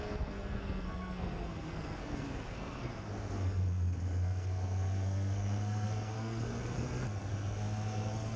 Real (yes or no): no